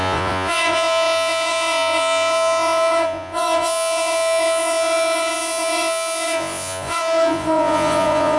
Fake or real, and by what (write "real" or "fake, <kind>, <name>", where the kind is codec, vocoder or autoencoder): fake, vocoder, Vocos